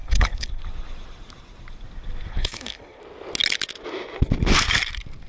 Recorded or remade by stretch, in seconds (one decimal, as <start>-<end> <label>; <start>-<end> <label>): 0.0-0.6 remade; 0.6-2.3 recorded; 2.3-3.0 remade; 3.0-5.3 recorded